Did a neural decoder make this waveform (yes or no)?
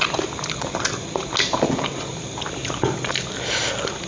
no